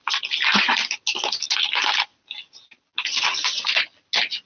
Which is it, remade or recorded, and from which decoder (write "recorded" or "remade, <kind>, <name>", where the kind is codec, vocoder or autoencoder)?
recorded